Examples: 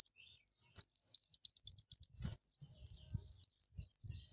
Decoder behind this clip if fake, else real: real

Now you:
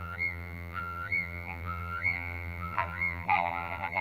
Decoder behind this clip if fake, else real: fake, vocoder, BigVGAN v2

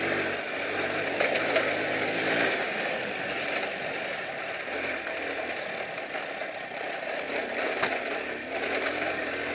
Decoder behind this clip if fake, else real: real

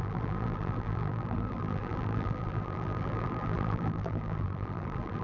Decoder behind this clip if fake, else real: fake, vocoder, BigVGAN v2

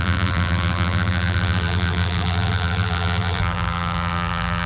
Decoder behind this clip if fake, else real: fake, vocoder, BigVGAN v2